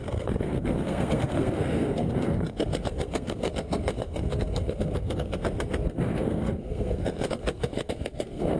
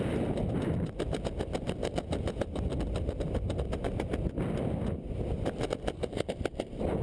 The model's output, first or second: first